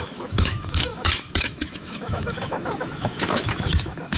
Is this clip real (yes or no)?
no